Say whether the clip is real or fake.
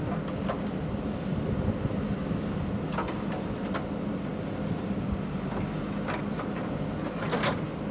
real